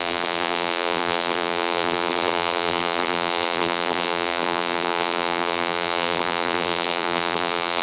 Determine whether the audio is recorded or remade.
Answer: remade